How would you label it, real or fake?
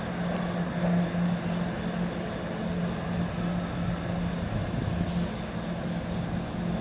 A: real